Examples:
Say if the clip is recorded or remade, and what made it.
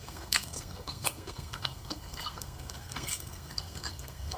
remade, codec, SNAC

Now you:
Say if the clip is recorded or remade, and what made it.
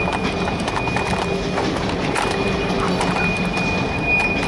recorded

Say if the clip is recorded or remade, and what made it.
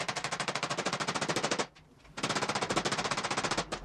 recorded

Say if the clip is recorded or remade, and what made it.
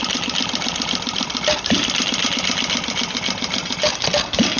recorded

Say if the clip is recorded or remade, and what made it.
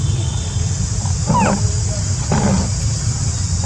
recorded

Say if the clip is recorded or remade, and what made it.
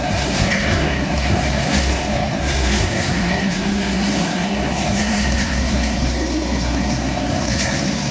remade, codec, SNAC